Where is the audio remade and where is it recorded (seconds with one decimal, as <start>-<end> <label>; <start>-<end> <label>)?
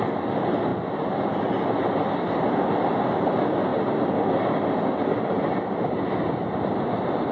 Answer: 0.0-7.3 recorded